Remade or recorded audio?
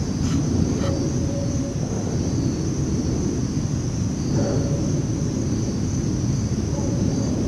recorded